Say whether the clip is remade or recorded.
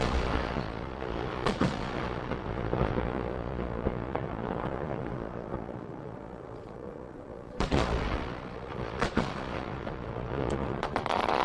remade